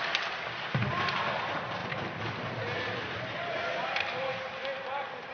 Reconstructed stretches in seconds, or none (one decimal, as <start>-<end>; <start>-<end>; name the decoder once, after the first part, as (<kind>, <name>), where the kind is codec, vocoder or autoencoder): none